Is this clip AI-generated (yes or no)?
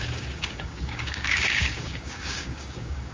yes